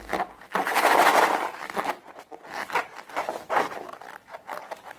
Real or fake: real